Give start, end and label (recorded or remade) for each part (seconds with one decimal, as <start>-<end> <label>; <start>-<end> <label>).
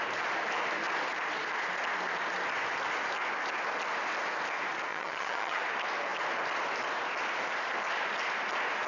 0.0-4.9 recorded; 4.9-5.6 remade; 5.6-8.9 recorded